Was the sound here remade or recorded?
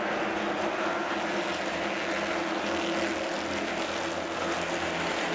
recorded